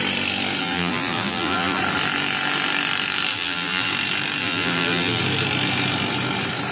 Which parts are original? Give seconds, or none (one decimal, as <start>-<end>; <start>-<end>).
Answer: 0.0-0.6; 1.8-3.3; 3.9-4.4; 5.2-6.7